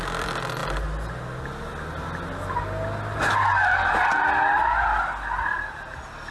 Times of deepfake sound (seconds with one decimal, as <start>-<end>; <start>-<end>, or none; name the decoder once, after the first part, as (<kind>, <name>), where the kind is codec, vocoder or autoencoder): none